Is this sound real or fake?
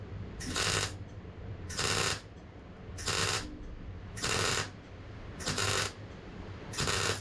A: real